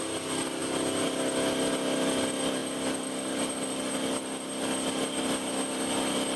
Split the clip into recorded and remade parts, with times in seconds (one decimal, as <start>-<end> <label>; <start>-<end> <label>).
0.0-6.4 recorded

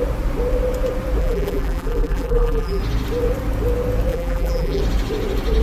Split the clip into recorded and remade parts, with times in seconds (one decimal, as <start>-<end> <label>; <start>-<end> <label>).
0.0-1.2 recorded; 1.2-2.8 remade; 2.8-4.1 recorded; 4.1-4.8 remade; 4.8-5.6 recorded

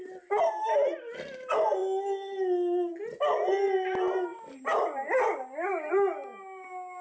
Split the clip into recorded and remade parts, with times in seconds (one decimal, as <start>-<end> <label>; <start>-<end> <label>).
0.0-7.0 recorded